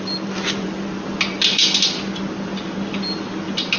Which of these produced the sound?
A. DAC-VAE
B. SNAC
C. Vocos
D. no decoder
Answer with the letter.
D